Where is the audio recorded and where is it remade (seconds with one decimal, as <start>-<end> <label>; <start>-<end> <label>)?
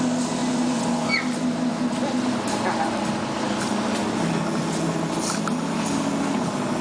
0.0-0.4 recorded; 0.4-1.1 remade; 1.1-6.8 recorded